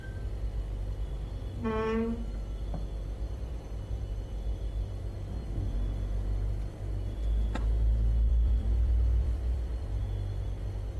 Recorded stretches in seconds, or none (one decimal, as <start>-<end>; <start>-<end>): 0.0-8.3; 10.0-11.0